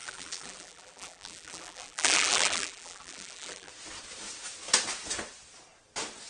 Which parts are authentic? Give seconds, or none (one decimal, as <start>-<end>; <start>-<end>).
3.7-6.3